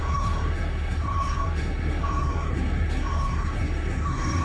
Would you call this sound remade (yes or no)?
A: yes